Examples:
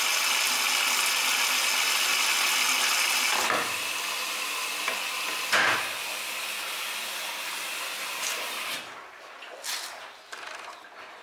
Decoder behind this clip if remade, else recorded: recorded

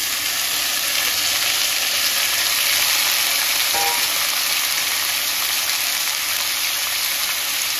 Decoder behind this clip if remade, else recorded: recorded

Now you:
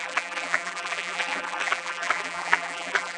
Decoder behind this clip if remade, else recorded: remade, vocoder, BigVGAN v2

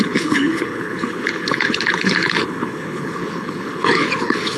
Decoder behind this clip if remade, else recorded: remade, codec, HILCodec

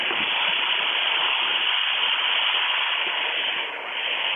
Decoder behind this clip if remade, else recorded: recorded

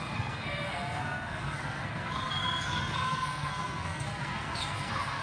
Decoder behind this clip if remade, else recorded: remade, codec, SNAC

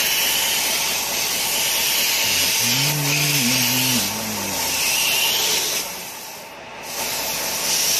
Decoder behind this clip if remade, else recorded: recorded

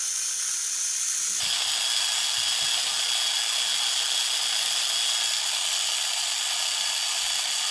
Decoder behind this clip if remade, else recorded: recorded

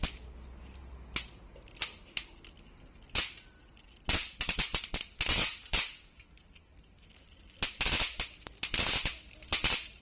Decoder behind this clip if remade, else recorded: recorded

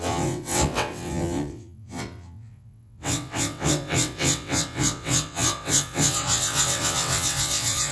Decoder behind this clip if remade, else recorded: remade, vocoder, WaveNeXt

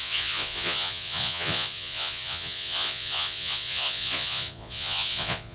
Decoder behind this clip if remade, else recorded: remade, vocoder, Vocos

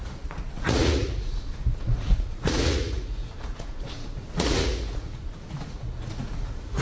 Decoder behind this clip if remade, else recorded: remade, vocoder, Vocos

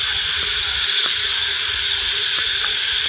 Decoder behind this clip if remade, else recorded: remade, vocoder, Vocos